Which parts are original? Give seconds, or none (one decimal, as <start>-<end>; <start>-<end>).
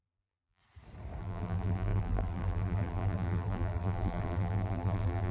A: 0.6-1.2